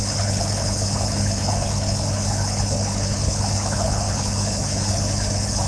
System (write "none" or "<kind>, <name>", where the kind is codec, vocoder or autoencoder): codec, HILCodec